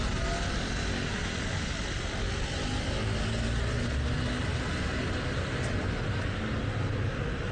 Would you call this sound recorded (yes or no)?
yes